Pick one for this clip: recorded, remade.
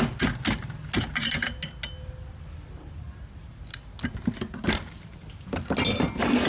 recorded